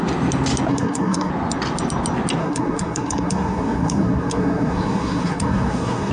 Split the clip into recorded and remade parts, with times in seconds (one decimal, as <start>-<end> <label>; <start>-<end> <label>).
0.0-0.7 recorded; 0.7-1.3 remade; 1.3-2.4 recorded; 2.4-6.1 remade